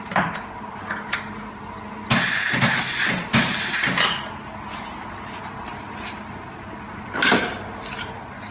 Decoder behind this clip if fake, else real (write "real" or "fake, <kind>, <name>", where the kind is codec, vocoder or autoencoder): real